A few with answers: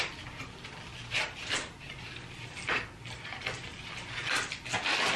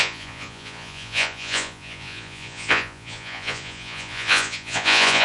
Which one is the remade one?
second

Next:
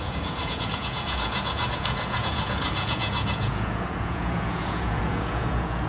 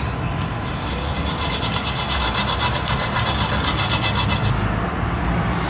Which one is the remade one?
first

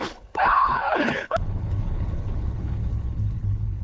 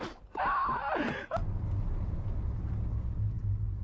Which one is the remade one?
first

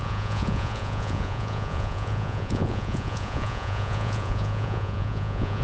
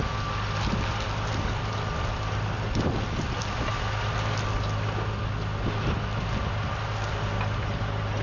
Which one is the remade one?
first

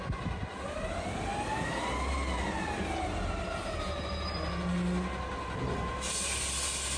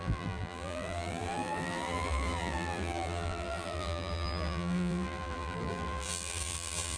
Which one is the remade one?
second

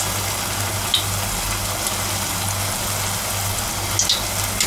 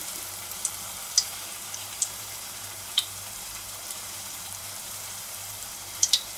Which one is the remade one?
second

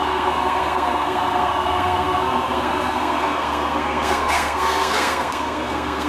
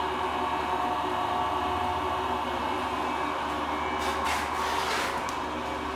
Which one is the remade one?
first